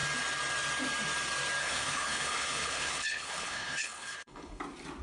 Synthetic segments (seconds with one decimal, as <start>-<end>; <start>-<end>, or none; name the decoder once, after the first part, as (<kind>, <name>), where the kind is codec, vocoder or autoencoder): 1.6-4.6 (codec, HILCodec)